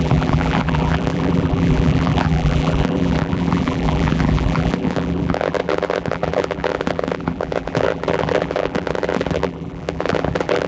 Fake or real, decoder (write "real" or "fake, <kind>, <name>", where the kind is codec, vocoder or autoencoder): fake, vocoder, BigVGAN v2